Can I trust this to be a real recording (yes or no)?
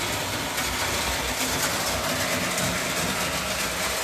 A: yes